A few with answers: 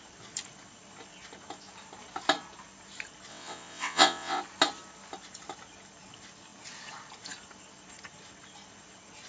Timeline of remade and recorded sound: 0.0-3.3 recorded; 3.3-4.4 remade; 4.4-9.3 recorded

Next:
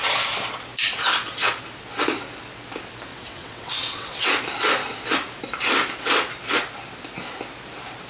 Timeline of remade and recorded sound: 0.0-3.1 recorded; 3.1-4.2 remade; 4.2-8.1 recorded

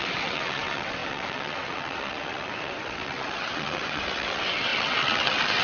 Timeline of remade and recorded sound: 0.0-5.6 remade

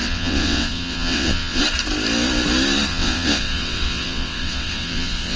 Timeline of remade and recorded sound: 0.0-1.6 remade; 1.6-2.9 recorded; 2.9-5.4 remade

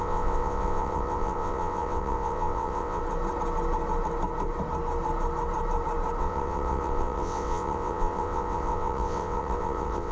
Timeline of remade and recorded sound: 0.0-3.0 remade; 3.0-6.2 recorded; 6.2-10.1 remade

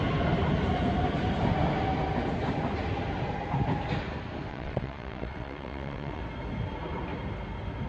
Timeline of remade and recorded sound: 0.0-4.5 recorded; 4.5-6.2 remade; 6.2-7.9 recorded